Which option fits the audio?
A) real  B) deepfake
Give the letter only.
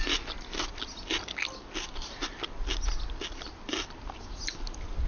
A